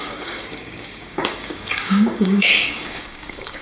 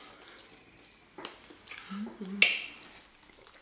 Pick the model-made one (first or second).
first